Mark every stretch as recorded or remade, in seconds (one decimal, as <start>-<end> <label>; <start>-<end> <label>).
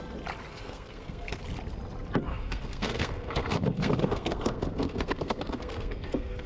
0.0-0.5 recorded; 0.5-1.4 remade; 1.4-2.3 recorded; 2.3-6.5 remade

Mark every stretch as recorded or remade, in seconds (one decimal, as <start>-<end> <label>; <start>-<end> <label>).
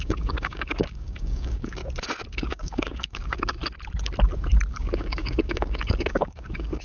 0.0-1.8 remade; 1.8-2.3 recorded; 2.3-3.6 remade; 3.6-4.7 recorded; 4.7-6.8 remade